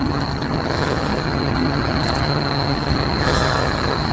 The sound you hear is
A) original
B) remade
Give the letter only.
B